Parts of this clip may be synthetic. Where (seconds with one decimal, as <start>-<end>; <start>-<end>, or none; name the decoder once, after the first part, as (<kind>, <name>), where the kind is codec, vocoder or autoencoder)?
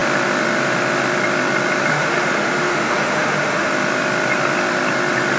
1.9-3.7 (autoencoder, DAC-VAE)